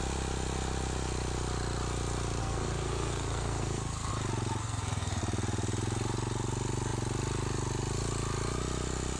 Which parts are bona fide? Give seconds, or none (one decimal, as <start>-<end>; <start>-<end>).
0.0-2.4; 4.1-4.6; 5.2-9.2